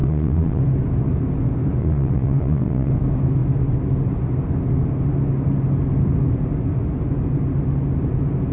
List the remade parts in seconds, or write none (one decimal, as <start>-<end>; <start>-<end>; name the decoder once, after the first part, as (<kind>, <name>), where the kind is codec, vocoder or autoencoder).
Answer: 0.0-0.6 (vocoder, Vocos); 1.8-2.9